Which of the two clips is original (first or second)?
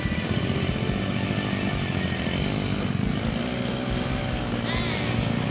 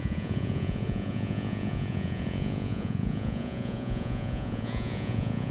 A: first